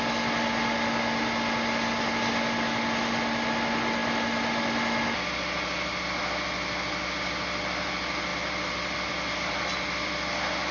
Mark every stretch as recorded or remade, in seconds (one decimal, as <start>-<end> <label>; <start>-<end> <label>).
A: 0.0-10.7 recorded